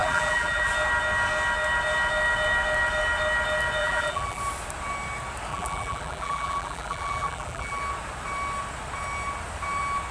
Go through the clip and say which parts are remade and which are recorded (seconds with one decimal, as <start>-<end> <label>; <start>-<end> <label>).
0.0-0.7 remade; 0.7-3.8 recorded; 3.8-4.4 remade; 4.4-5.5 recorded; 5.5-7.8 remade; 7.8-10.1 recorded